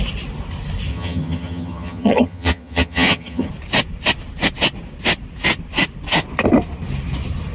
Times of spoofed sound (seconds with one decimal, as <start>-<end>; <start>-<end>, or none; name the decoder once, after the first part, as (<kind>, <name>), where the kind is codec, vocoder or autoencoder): 0.9-3.5 (vocoder, HiFi-GAN)